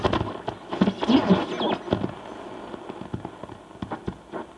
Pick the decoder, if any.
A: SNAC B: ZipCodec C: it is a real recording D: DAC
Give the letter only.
C